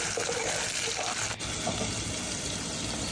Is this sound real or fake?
real